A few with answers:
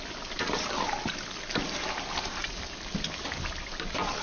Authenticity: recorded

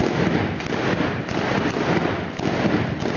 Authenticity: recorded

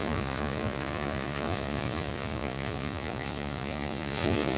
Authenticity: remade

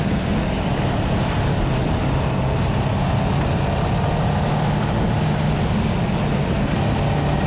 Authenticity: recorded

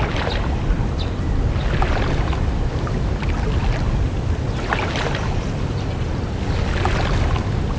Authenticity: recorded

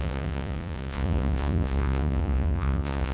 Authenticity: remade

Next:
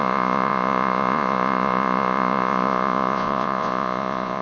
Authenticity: remade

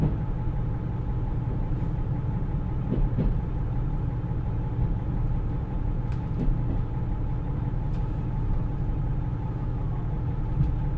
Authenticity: recorded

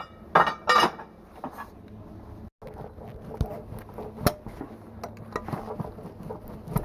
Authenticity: recorded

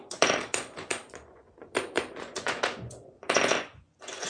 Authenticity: remade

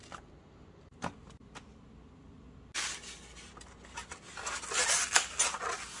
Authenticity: recorded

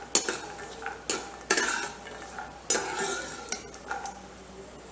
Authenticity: recorded